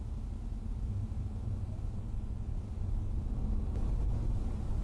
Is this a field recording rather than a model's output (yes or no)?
yes